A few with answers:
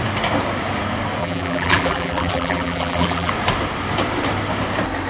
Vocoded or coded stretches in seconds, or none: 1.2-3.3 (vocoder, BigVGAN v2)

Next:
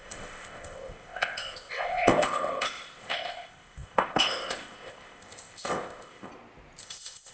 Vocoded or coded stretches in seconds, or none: 0.0-6.3 (codec, ZipCodec); 6.8-7.3

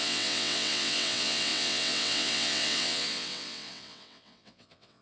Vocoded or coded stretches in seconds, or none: 0.0-5.0 (vocoder, WaveNeXt)

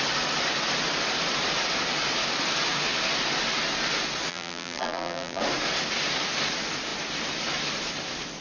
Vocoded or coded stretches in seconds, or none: 4.3-5.4 (vocoder, BigVGAN v2)